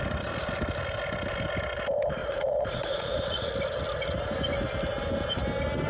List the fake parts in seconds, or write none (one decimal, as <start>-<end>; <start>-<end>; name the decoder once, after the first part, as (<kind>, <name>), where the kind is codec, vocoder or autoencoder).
2.2-3.5 (vocoder, Vocos)